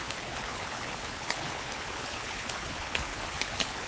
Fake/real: fake